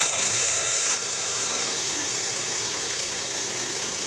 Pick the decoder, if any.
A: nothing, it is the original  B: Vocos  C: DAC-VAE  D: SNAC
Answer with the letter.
D